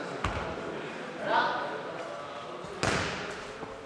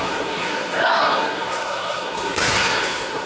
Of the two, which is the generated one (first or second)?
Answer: second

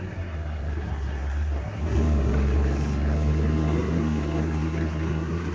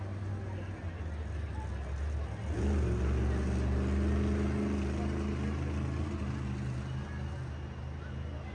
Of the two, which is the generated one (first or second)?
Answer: first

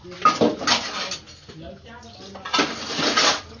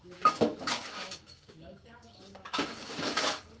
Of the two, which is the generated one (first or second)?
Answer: second